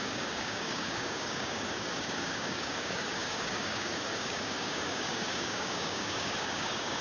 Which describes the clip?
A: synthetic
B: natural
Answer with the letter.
A